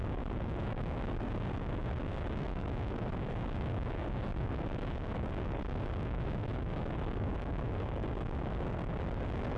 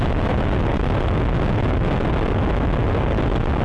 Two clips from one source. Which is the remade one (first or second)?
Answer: first